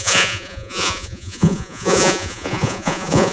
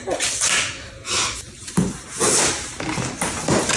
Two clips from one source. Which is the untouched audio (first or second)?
second